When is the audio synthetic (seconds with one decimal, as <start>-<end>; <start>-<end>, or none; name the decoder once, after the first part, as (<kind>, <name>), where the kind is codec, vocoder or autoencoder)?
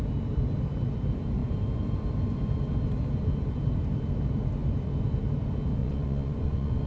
5.8-6.9 (vocoder, Vocos)